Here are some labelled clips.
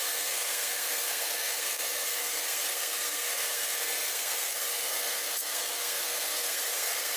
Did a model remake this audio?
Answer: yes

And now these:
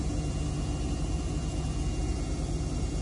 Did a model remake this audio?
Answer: no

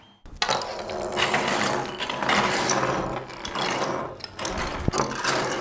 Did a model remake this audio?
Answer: no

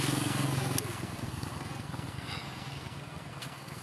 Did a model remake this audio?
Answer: yes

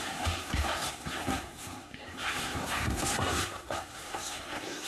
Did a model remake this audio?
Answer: yes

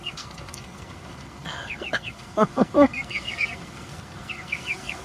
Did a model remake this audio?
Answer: yes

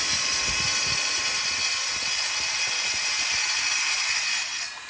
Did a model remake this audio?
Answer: no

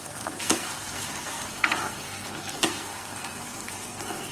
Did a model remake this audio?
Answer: yes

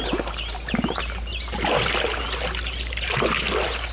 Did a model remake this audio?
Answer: no